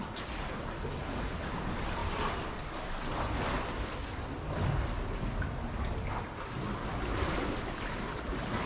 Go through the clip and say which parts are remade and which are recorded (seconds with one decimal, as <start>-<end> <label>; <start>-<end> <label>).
0.0-8.7 recorded

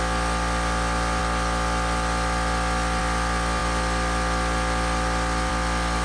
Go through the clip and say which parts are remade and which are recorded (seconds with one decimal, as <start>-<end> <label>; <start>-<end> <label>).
0.0-6.0 recorded

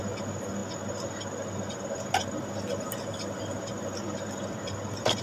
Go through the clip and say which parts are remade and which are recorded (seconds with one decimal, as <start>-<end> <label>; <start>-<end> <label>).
0.0-5.2 recorded

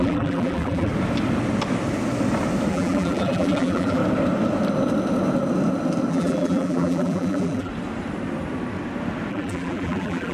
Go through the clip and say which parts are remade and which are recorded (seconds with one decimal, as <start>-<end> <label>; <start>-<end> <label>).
0.0-0.9 remade; 0.9-2.7 recorded; 2.7-4.0 remade; 4.0-6.1 recorded; 6.1-7.7 remade; 7.7-9.3 recorded; 9.3-10.3 remade

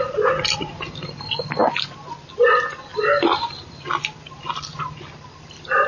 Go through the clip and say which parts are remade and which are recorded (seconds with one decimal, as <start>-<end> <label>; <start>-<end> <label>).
0.0-2.9 recorded; 2.9-4.8 remade; 4.8-5.9 recorded